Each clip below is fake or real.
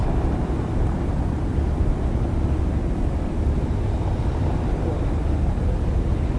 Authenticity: real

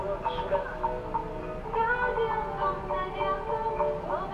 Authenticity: real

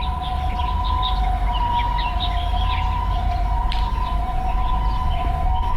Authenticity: real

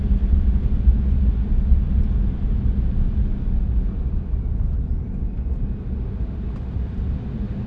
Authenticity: real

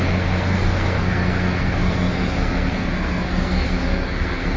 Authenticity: fake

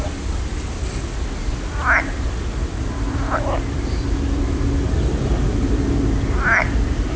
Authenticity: real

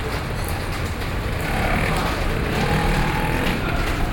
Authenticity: real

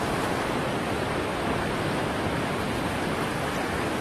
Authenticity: real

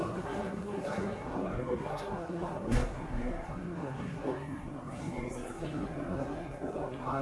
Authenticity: fake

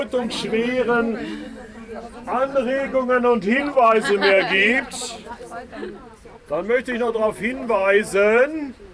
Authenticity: fake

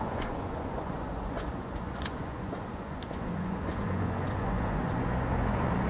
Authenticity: fake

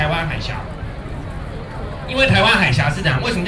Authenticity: real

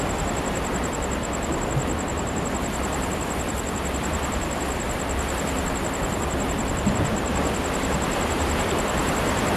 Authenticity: real